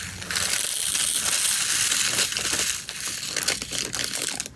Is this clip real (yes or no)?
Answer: yes